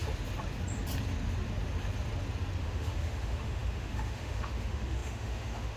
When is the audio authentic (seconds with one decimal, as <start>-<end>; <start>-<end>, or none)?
0.0-2.6